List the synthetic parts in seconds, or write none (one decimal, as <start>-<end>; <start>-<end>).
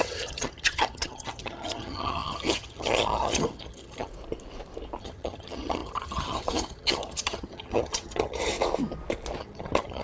0.0-4.1; 5.0-8.5; 9.4-10.0